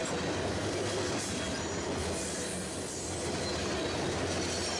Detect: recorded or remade recorded